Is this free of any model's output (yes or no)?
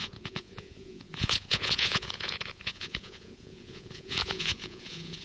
no